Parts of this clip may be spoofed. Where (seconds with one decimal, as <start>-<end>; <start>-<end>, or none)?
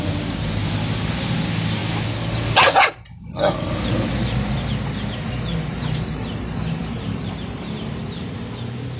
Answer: none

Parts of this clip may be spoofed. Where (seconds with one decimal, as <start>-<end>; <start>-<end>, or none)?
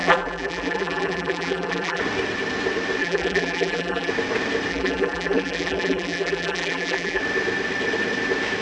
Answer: 0.0-2.0; 3.0-4.1; 4.7-7.2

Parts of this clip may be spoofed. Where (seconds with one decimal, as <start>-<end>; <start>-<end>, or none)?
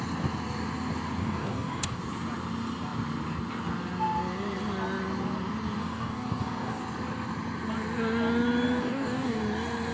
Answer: 1.2-2.0; 5.8-6.8; 8.8-9.4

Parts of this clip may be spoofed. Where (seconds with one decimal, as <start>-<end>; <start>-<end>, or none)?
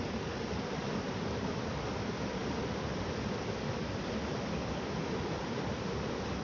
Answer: none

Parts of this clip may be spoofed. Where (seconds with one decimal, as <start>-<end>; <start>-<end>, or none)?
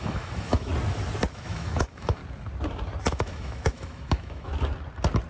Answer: 0.0-0.7; 1.3-2.2; 3.1-4.5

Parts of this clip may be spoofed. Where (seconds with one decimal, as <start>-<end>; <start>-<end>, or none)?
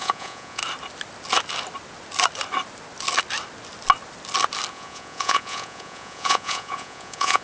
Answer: 0.0-0.6; 4.7-7.4